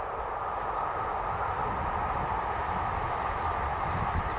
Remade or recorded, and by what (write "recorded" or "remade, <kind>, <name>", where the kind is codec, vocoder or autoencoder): recorded